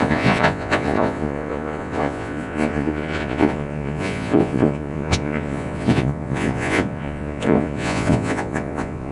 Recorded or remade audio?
remade